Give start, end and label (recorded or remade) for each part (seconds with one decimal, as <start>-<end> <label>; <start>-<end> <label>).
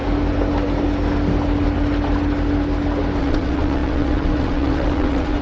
0.0-3.2 recorded; 3.2-5.4 remade